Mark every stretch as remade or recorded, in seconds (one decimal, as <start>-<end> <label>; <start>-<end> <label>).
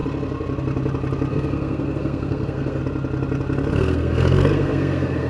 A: 0.0-1.3 recorded; 1.3-2.8 remade; 2.8-3.7 recorded; 3.7-5.3 remade